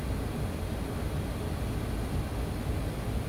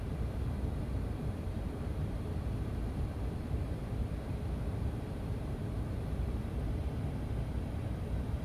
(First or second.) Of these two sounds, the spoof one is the second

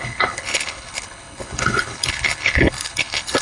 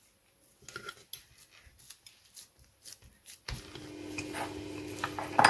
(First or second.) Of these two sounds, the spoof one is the first